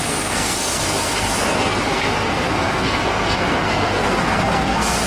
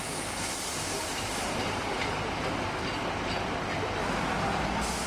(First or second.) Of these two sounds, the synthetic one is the first